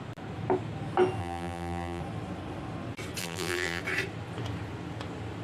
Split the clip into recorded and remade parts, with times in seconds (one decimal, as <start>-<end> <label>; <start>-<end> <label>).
0.0-1.2 recorded; 1.2-2.0 remade; 2.0-3.2 recorded; 3.2-3.8 remade; 3.8-5.4 recorded